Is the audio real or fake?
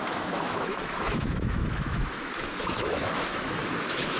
fake